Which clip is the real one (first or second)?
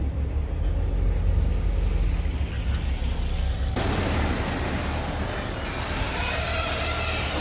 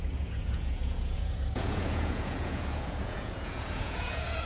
first